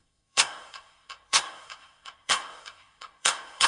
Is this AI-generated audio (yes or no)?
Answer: yes